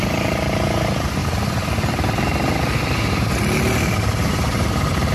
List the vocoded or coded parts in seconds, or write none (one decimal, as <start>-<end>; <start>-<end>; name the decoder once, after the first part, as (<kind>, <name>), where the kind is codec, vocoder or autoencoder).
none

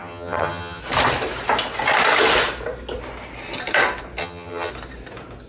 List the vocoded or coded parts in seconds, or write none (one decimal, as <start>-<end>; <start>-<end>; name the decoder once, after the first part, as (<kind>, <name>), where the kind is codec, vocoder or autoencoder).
0.0-0.8 (vocoder, HiFi-GAN); 4.2-4.7

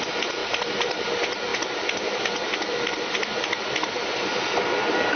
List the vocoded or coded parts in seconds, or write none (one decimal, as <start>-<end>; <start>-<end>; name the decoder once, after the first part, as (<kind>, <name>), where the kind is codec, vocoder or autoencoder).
none

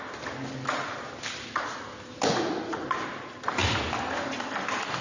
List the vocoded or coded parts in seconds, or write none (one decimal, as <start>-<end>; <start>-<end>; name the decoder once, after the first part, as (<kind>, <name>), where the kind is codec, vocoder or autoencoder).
none

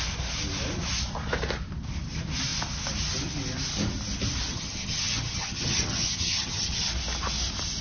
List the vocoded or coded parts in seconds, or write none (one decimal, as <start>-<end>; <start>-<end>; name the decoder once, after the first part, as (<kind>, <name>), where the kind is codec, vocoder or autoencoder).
4.5-6.9 (vocoder, HiFi-GAN)